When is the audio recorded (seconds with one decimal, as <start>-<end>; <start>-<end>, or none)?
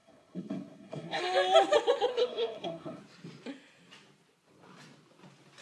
1.2-2.1; 3.0-5.6